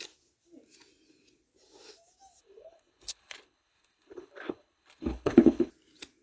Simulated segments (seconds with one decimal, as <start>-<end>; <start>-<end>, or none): 2.4-5.7